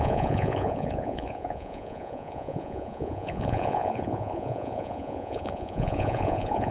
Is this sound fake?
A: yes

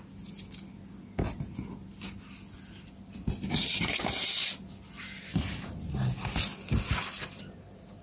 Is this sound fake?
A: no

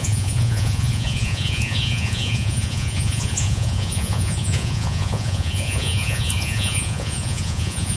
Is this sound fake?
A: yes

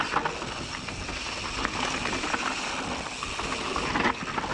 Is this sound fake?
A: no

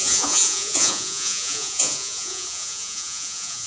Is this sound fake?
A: yes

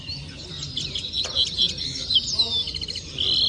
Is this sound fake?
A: no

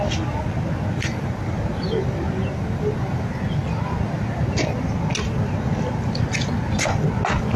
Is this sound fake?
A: no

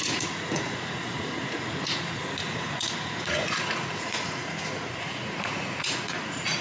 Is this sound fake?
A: yes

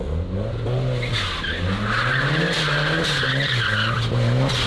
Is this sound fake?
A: no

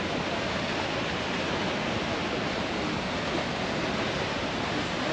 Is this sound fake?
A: no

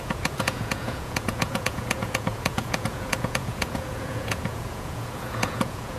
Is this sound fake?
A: yes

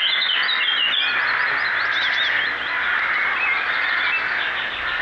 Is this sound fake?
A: no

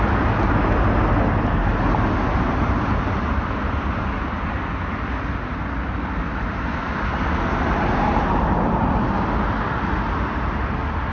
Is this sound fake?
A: no